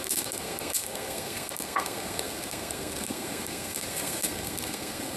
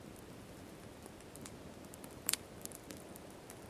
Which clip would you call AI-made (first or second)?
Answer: first